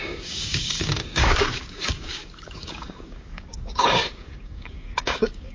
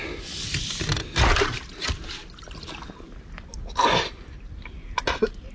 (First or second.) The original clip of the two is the second